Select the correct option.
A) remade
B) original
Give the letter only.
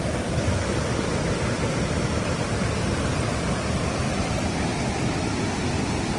A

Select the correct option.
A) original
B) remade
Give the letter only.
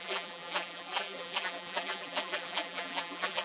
B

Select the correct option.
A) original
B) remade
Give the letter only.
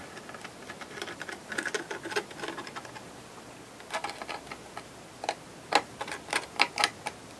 A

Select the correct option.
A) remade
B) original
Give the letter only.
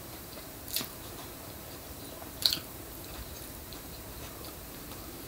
A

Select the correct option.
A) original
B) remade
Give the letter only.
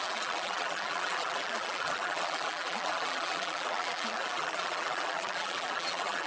B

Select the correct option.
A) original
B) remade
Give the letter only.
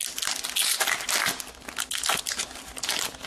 A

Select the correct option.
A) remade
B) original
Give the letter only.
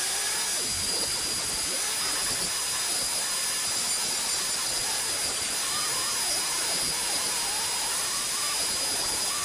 B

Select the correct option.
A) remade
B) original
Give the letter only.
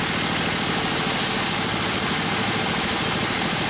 A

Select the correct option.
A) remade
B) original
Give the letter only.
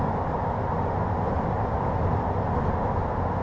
B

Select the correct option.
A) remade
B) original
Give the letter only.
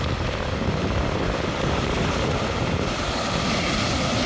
B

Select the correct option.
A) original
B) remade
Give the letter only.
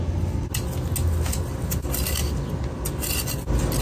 A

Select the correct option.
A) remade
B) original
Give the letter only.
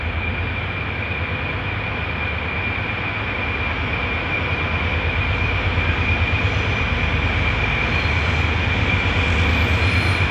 B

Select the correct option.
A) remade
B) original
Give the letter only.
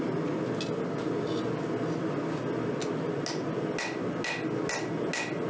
B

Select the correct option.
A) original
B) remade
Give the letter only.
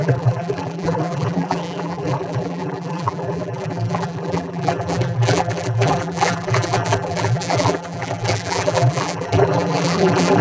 B